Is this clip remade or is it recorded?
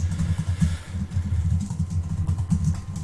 recorded